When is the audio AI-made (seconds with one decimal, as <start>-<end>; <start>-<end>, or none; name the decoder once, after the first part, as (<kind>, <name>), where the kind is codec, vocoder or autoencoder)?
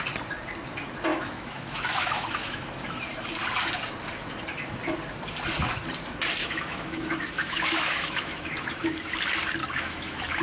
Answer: 1.1-2.8 (autoencoder, DAC-VAE); 6.4-9.1; 9.6-10.4